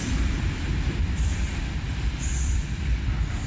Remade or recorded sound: recorded